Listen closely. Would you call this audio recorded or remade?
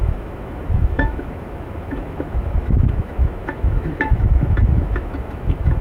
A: remade